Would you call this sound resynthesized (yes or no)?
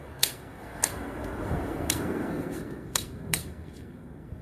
yes